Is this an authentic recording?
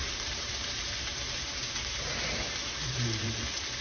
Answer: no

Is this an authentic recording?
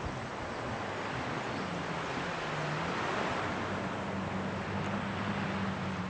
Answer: yes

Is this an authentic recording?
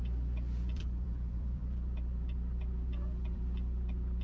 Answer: no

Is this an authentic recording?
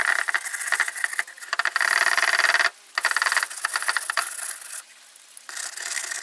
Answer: yes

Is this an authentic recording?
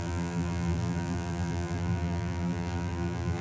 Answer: no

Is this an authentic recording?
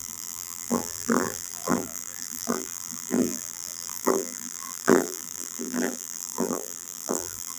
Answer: no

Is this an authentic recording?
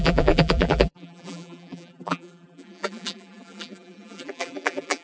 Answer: no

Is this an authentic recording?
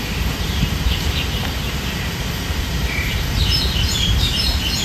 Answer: no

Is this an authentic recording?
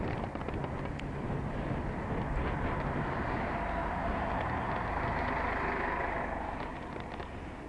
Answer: yes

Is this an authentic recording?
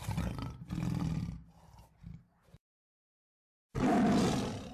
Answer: yes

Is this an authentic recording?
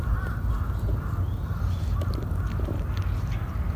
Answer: yes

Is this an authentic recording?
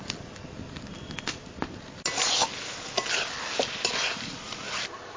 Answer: yes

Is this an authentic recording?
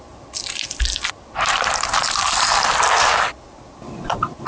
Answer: yes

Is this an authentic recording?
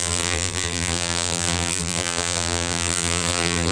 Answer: no